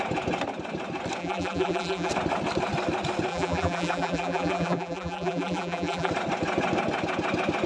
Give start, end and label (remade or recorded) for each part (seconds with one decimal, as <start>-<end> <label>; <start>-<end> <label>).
0.0-1.2 recorded; 1.2-2.1 remade; 2.1-3.3 recorded; 3.3-6.1 remade; 6.1-7.7 recorded